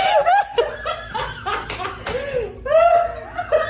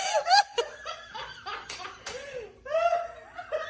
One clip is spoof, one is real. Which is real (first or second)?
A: first